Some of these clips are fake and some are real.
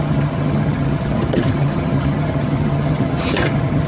fake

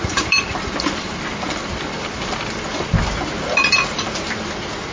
real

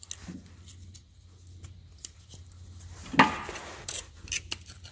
real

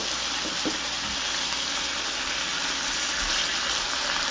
real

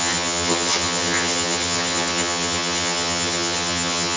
fake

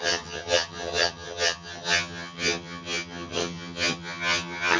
fake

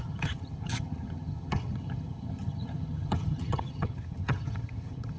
fake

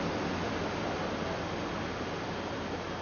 real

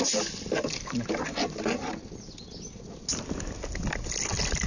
real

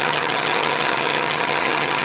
fake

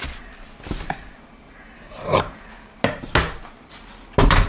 real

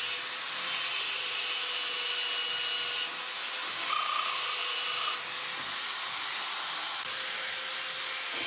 real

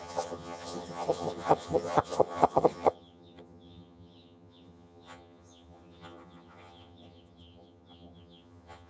fake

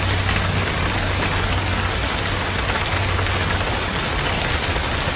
real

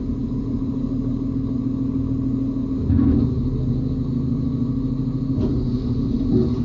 real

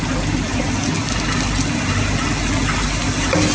real